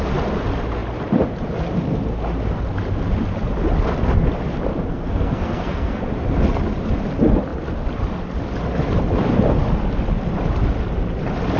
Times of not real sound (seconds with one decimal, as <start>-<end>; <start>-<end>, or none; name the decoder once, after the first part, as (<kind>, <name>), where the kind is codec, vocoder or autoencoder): 4.9-6.0 (codec, SNAC)